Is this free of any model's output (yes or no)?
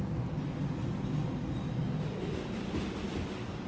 yes